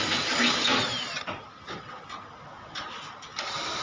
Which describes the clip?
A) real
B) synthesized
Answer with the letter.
A